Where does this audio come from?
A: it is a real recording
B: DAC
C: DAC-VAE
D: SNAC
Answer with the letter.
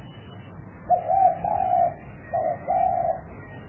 A